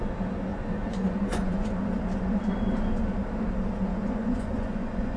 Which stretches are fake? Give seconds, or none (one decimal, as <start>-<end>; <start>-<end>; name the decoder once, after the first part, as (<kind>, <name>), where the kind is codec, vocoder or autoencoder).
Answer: 0.5-1.8 (vocoder, Vocos); 3.9-5.2